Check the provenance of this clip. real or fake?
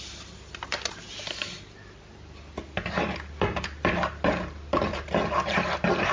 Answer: real